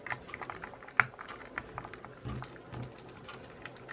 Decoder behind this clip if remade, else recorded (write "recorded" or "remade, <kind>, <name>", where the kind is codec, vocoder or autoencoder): recorded